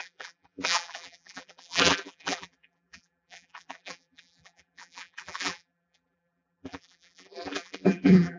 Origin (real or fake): fake